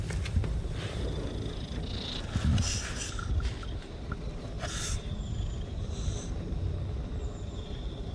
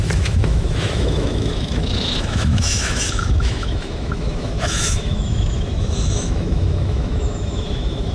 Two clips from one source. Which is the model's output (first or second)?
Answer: second